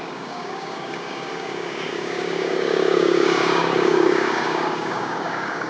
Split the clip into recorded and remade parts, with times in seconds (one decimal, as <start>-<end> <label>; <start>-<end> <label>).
0.0-5.7 remade